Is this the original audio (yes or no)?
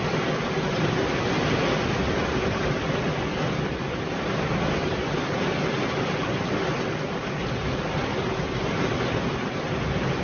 yes